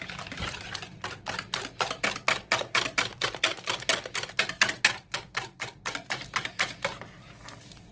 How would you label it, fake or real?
real